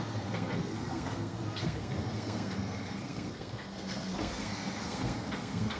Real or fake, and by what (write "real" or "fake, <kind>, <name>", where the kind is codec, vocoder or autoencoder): fake, codec, SNAC